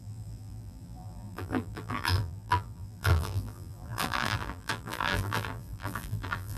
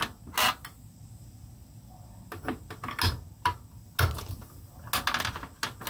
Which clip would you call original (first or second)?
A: second